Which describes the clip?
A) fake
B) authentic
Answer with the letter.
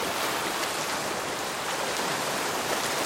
B